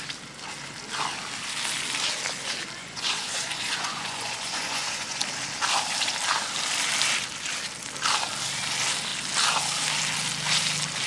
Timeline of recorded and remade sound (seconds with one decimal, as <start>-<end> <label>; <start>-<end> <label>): 0.0-2.8 recorded; 2.8-5.2 remade; 5.2-11.1 recorded

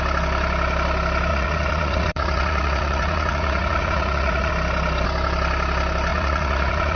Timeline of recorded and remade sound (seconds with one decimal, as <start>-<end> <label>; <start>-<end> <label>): 0.0-1.3 recorded; 1.3-4.5 remade; 4.5-6.1 recorded; 6.1-7.0 remade

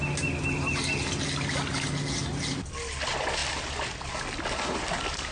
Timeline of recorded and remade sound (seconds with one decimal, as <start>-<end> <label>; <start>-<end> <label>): 0.0-5.3 recorded